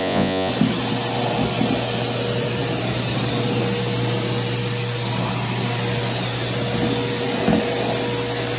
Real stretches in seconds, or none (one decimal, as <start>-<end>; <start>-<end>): 0.5-8.6